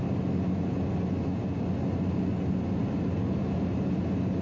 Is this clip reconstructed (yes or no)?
no